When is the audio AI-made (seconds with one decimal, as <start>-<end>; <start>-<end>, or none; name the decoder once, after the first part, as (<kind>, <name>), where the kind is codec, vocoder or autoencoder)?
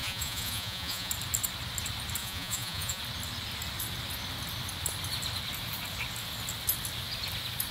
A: 0.0-1.1 (vocoder, Vocos); 2.2-3.0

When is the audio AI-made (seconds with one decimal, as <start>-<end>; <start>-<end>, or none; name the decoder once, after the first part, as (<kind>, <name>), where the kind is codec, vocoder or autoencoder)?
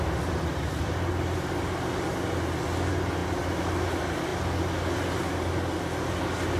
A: none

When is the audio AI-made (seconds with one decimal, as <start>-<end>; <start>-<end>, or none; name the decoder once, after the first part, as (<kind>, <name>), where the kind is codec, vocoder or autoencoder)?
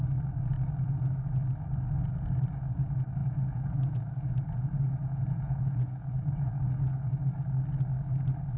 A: 3.2-7.1 (vocoder, Vocos)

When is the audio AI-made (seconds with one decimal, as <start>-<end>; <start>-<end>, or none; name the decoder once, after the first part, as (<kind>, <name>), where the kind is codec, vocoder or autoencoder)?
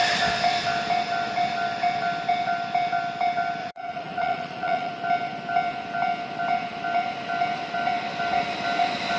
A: 3.6-4.9 (vocoder, Vocos)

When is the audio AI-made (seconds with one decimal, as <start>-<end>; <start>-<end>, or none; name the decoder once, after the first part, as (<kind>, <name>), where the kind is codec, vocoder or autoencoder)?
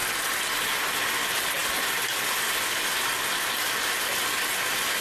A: none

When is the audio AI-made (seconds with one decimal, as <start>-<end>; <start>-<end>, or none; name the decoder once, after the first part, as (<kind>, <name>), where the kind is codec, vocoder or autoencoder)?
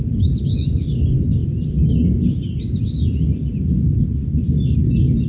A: none